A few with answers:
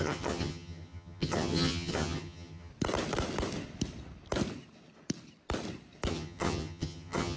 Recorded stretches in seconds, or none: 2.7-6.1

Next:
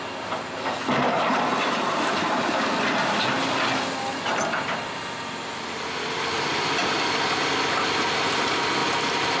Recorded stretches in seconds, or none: 0.0-9.4

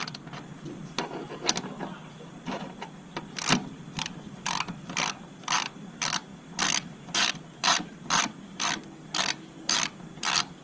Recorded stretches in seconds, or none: none

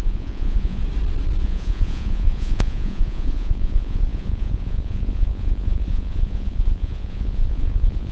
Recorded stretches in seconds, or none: 0.8-1.4